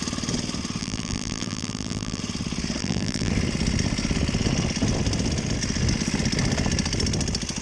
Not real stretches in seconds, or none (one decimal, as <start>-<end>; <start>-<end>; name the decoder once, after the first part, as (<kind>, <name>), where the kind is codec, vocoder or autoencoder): 0.8-2.2 (vocoder, BigVGAN v2); 2.8-3.3